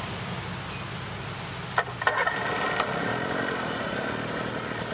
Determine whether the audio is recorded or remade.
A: recorded